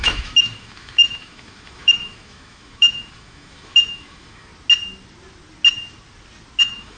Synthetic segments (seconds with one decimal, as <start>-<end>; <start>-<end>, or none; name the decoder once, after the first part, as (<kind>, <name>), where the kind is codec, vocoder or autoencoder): 0.0-4.5 (autoencoder, DAC-VAE); 6.6-7.0